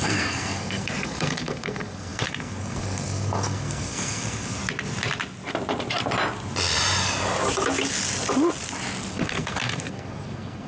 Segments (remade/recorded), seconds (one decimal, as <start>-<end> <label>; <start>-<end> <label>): 0.0-4.6 remade; 4.6-9.1 recorded; 9.1-10.7 remade